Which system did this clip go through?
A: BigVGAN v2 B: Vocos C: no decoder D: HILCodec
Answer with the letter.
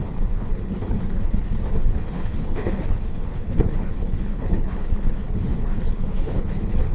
D